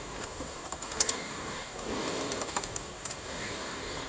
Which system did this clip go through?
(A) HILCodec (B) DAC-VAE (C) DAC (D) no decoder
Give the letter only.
C